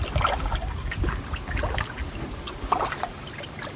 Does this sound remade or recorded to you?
recorded